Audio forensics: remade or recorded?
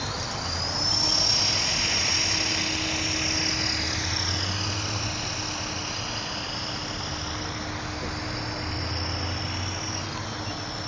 recorded